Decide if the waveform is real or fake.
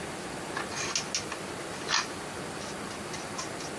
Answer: real